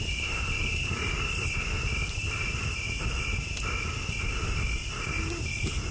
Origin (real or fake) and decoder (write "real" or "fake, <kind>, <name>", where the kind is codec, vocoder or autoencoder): real